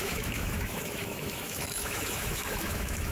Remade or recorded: remade